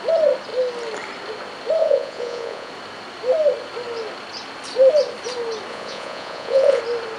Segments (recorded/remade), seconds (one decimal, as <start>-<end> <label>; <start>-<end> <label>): 0.0-1.8 recorded; 1.8-2.7 remade; 2.7-5.7 recorded; 5.7-6.8 remade; 6.8-7.2 recorded